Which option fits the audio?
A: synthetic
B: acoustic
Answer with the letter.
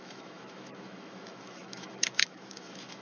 A